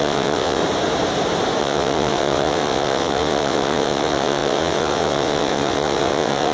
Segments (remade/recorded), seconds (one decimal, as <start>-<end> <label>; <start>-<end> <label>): 0.0-0.6 remade; 0.6-1.6 recorded; 1.6-6.5 remade